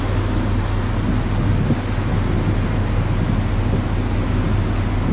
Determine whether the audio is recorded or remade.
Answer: recorded